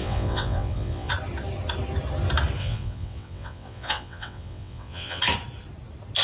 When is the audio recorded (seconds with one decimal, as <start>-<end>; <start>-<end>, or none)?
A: 1.1-2.6; 5.2-6.2